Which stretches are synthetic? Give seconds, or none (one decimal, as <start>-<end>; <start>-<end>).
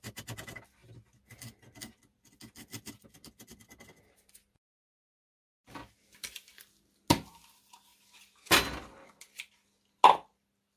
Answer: none